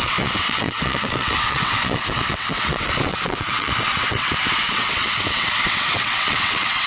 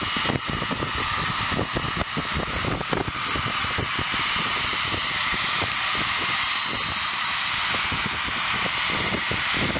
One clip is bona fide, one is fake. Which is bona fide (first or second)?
second